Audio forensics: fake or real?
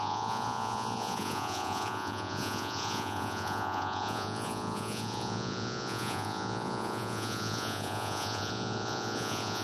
fake